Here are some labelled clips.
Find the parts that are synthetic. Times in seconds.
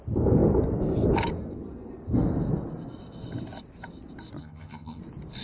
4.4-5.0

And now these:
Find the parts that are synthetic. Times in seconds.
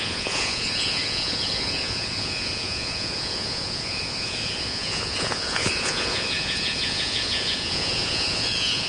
0.0-8.9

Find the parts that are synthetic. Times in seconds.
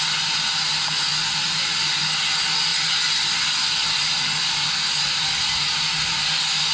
none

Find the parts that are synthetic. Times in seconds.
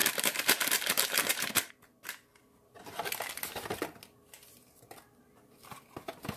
0.0-1.7